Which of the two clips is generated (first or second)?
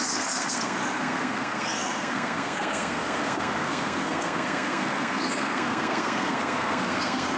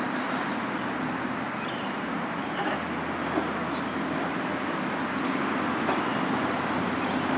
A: first